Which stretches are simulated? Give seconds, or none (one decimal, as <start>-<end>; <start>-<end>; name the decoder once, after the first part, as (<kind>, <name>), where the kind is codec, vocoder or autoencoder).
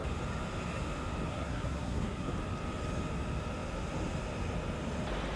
1.3-2.3 (codec, SNAC)